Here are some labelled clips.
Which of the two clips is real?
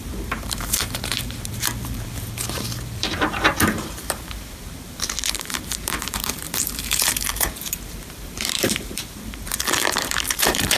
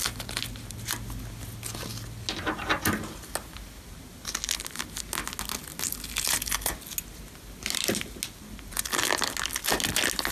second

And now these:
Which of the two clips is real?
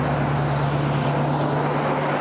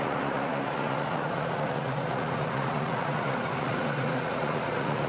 first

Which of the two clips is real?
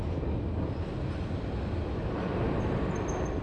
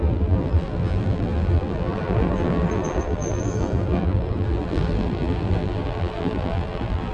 first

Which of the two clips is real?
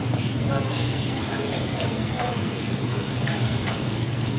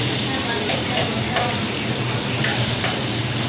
second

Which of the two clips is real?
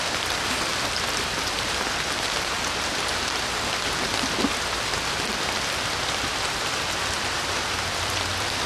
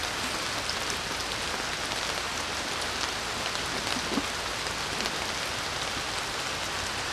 second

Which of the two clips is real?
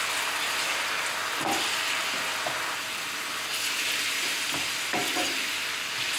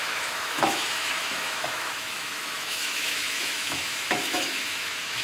first